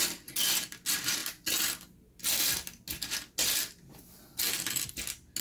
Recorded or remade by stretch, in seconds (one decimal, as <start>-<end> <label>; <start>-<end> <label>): 0.0-5.4 recorded